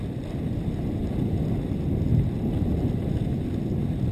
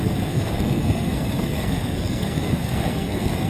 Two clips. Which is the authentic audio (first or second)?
first